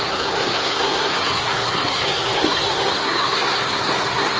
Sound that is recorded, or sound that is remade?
remade